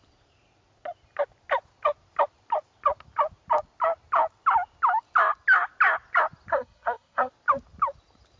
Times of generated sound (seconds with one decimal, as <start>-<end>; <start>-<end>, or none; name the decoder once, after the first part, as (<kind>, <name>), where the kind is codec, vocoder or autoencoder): 6.5-7.3 (codec, SNAC)